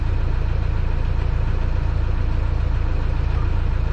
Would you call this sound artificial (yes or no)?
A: no